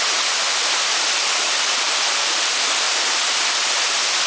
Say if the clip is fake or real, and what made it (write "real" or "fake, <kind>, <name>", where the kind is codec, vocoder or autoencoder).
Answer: real